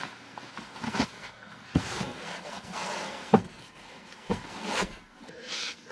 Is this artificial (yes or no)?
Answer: yes